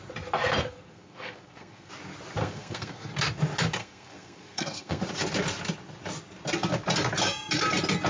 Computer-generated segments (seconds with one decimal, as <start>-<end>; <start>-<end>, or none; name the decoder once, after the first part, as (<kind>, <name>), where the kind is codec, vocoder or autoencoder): 0.6-1.9 (codec, SNAC); 2.4-3.1; 3.8-5.0